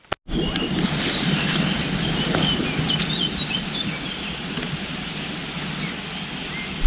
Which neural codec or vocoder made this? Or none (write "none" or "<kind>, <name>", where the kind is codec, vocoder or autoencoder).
none